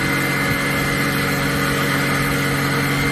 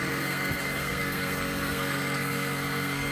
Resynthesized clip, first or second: second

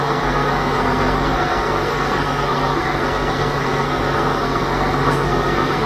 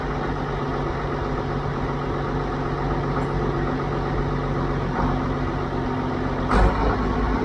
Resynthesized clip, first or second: first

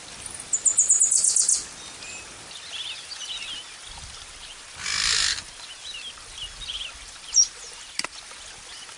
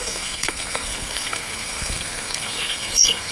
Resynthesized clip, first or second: second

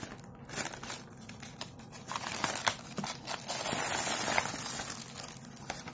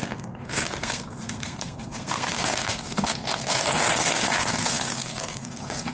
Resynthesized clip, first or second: second